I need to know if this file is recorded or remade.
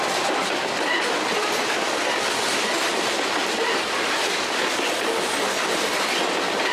recorded